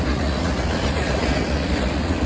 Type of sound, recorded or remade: remade